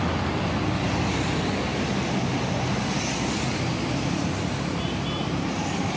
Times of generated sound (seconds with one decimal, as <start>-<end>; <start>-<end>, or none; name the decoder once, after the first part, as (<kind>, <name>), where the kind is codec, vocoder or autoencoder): none